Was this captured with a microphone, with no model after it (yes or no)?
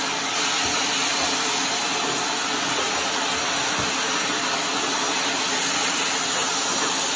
yes